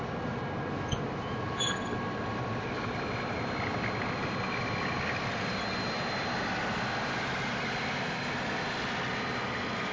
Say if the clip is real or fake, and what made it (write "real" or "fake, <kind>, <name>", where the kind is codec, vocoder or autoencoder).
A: real